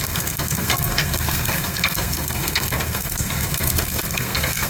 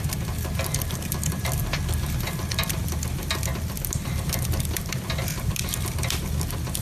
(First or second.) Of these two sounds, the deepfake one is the first